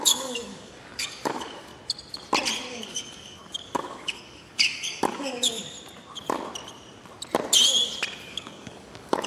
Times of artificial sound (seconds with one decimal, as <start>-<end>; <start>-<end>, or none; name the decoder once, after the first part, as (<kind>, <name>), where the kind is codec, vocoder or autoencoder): 0.0-1.7 (codec, DAC); 2.7-5.6; 8.2-9.3